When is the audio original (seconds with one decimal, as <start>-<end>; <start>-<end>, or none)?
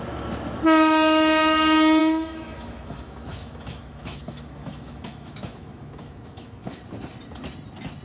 0.0-2.0; 6.8-8.0